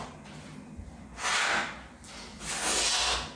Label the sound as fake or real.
real